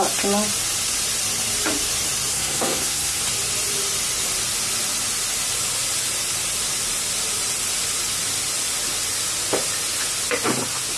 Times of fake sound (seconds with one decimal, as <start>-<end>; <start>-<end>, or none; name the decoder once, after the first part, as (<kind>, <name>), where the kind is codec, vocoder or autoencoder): 2.3-3.2 (codec, SNAC)